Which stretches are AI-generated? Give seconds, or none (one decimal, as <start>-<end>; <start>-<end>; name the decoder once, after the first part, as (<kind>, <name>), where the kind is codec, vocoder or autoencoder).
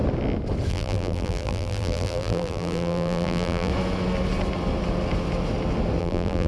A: 0.7-3.7 (vocoder, BigVGAN v2); 6.0-6.5